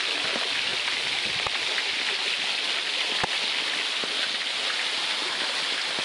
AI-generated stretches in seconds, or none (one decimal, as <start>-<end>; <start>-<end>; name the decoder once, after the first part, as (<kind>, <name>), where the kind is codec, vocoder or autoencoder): none